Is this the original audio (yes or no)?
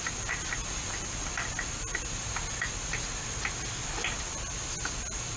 yes